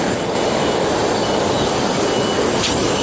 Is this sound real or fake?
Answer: real